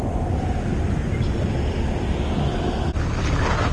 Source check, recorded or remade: recorded